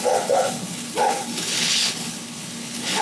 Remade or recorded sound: remade